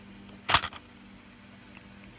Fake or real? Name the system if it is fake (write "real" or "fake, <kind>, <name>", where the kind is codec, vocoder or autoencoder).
real